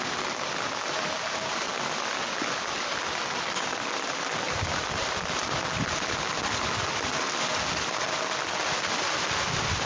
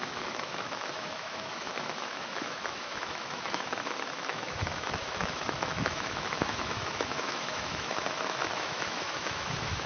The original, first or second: first